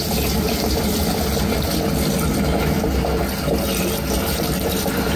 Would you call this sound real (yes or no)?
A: yes